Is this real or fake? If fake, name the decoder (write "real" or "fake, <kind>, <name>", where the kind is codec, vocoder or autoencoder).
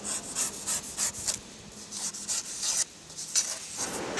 real